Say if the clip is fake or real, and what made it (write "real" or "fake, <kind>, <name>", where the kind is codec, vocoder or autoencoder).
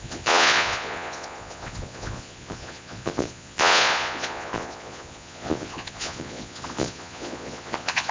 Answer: fake, vocoder, Vocos